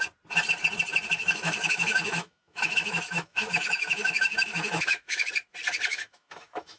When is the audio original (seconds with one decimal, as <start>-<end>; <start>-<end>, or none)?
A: 0.0-1.2; 5.3-5.9